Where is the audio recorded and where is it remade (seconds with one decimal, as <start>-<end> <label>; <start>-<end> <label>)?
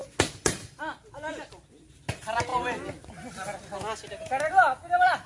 0.0-5.3 recorded